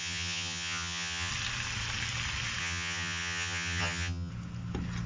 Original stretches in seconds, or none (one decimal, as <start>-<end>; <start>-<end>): 1.3-2.6; 4.3-5.1